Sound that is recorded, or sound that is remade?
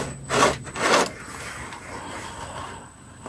recorded